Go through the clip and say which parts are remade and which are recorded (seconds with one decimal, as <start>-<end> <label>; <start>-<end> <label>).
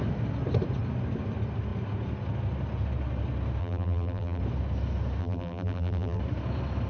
0.0-3.6 recorded; 3.6-4.4 remade; 4.4-5.2 recorded; 5.2-6.2 remade; 6.2-6.9 recorded